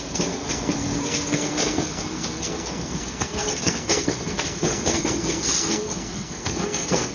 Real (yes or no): no